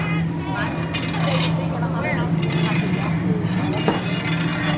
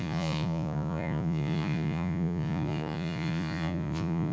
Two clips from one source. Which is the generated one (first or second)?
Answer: second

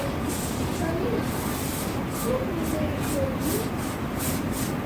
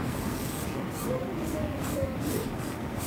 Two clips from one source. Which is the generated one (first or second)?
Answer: second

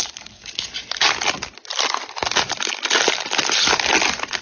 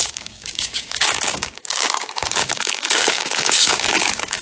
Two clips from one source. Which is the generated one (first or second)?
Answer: second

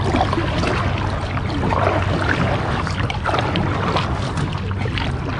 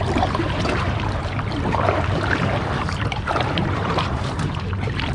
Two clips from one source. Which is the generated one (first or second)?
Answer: second